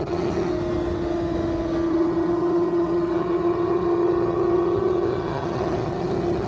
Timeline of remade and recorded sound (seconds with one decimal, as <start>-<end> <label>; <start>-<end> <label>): 0.0-0.5 remade; 0.5-1.9 recorded; 1.9-6.5 remade